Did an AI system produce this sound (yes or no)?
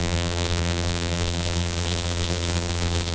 yes